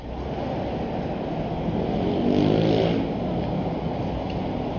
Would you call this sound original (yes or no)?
yes